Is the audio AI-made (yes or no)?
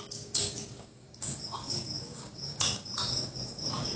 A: yes